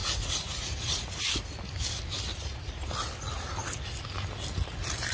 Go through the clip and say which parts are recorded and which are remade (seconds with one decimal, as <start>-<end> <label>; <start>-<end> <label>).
0.0-1.3 remade; 1.3-2.3 recorded; 2.3-2.9 remade; 2.9-5.1 recorded

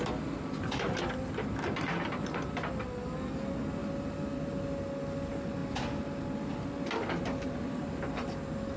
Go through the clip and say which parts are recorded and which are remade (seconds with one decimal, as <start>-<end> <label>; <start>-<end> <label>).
0.0-8.8 recorded

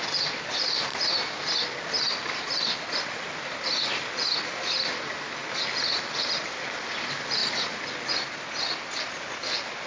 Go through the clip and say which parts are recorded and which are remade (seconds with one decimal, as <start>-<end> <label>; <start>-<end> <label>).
0.0-9.9 recorded

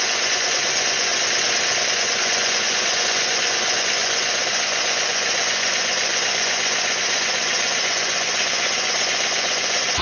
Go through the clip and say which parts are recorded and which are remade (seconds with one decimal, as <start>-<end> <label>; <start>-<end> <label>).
0.0-1.1 remade; 1.1-1.8 recorded; 1.8-10.0 remade

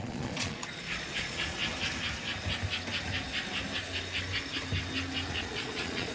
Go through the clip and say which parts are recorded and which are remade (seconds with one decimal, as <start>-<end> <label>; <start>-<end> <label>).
0.0-1.6 remade; 1.6-5.3 recorded; 5.3-6.1 remade

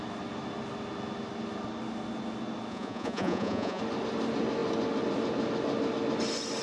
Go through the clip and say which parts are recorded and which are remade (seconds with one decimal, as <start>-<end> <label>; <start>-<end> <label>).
0.0-2.7 recorded; 2.7-3.8 remade; 3.8-6.6 recorded